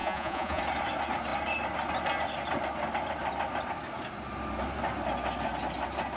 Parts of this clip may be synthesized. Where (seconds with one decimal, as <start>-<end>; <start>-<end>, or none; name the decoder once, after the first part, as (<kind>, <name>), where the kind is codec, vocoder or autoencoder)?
0.0-0.6 (vocoder, Vocos)